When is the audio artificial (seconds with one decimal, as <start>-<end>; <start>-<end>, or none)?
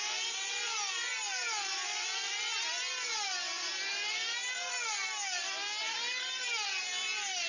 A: none